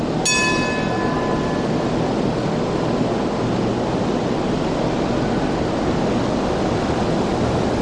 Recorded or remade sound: recorded